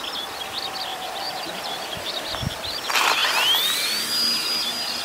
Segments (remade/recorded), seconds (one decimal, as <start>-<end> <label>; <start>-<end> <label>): 0.0-0.9 recorded; 0.9-2.3 remade; 2.3-5.0 recorded